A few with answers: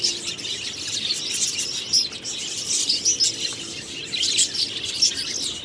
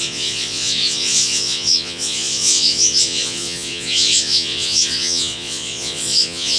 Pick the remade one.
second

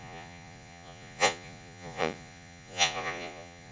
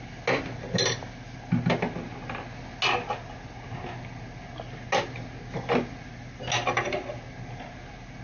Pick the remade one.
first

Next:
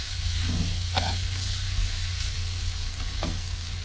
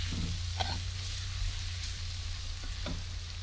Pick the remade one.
first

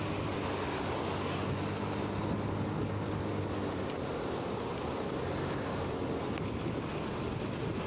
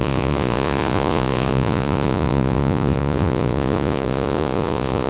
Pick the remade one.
second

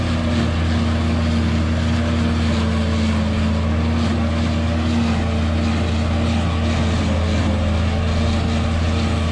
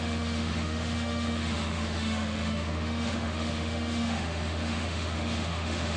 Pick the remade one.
second